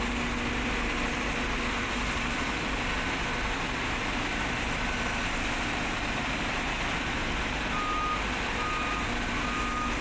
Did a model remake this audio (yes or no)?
no